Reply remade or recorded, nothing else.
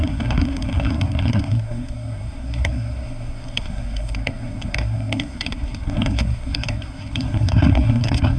remade